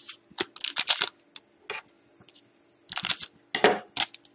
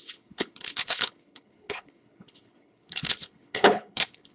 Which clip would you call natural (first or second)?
first